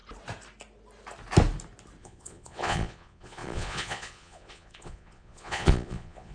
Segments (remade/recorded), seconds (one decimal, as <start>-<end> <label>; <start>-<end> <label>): 0.0-2.0 recorded; 2.0-6.3 remade